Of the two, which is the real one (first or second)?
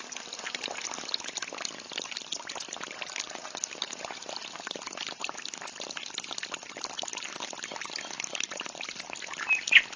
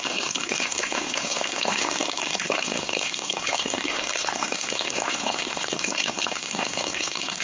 first